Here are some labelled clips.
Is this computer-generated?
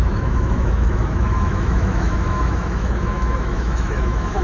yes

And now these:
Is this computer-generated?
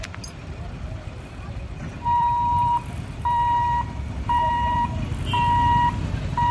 yes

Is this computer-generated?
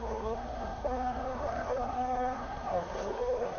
yes